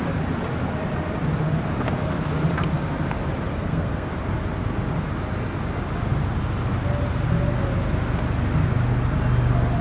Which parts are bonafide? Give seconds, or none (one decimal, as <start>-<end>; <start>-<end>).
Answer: 0.0-3.5; 4.1-9.8